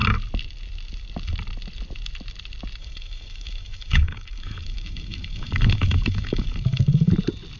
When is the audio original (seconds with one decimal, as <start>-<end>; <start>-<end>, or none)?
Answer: 0.0-2.8; 7.1-7.6